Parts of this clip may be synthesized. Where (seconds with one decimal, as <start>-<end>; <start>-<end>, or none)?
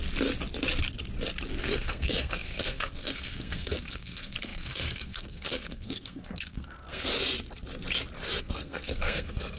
1.6-7.1; 8.4-9.6